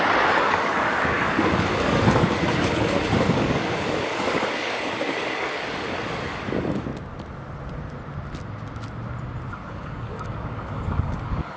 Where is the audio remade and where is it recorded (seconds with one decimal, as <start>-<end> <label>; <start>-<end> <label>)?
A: 0.0-6.9 remade; 6.9-9.5 recorded; 9.5-11.6 remade

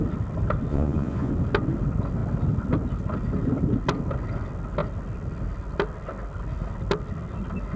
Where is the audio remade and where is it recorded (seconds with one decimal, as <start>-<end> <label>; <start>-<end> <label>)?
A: 0.0-0.7 recorded; 0.7-1.3 remade; 1.3-7.8 recorded

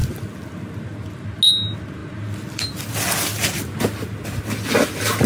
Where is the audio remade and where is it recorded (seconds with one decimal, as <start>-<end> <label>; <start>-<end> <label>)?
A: 0.0-5.3 recorded

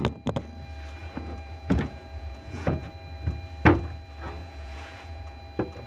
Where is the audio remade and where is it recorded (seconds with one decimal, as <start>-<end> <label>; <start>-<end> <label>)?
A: 0.0-1.0 recorded; 1.0-2.9 remade; 2.9-4.4 recorded; 4.4-5.4 remade; 5.4-5.9 recorded